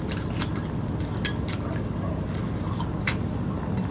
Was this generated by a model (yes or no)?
no